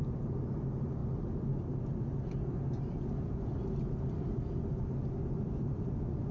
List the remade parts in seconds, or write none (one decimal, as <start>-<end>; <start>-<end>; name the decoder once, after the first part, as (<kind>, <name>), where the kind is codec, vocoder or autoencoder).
none

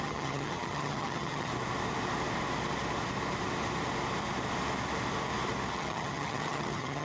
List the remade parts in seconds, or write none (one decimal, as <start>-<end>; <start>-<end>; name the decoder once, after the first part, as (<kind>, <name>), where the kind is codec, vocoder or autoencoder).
0.0-1.5 (vocoder, HiFi-GAN); 5.7-7.0

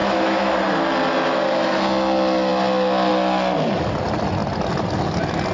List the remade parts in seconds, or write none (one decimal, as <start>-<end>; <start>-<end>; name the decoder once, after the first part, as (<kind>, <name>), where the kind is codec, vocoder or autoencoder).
0.0-0.5 (autoencoder, DAC-VAE)

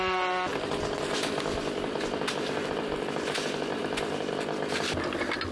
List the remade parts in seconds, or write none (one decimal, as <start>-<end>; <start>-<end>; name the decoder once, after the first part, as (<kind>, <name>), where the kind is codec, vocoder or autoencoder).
none

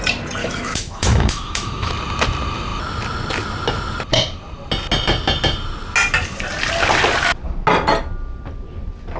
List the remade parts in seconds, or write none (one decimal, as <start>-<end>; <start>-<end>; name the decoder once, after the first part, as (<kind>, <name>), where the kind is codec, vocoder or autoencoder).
0.4-1.9 (autoencoder, DAC-VAE)

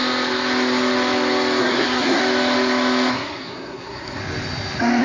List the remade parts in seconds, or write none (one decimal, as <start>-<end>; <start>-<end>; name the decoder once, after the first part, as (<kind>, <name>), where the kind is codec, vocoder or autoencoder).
1.6-2.2 (codec, SNAC); 3.1-4.2

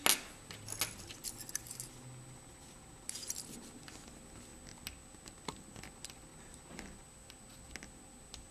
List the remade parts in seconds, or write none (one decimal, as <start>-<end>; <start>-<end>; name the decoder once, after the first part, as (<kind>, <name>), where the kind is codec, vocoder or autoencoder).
none

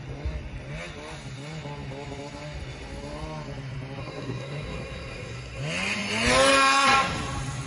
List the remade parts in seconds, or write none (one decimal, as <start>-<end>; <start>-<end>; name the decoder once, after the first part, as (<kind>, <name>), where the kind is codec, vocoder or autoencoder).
4.0-5.6 (codec, SNAC)